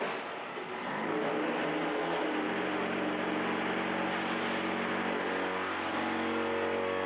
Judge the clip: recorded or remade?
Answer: recorded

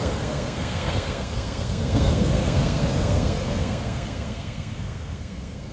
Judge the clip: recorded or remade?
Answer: remade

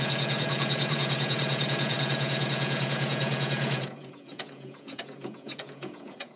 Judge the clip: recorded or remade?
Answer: remade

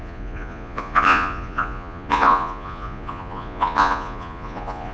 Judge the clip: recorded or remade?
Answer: remade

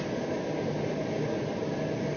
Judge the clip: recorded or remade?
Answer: recorded